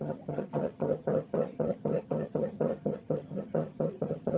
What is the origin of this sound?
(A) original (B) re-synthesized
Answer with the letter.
B